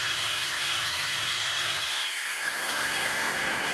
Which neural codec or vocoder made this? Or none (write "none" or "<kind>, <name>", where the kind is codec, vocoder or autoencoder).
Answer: codec, SNAC